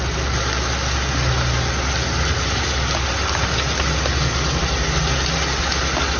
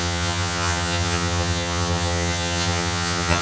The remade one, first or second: second